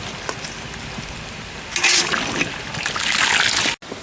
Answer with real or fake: real